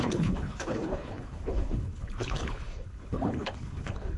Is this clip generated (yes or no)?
yes